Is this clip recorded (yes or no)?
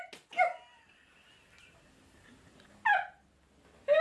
yes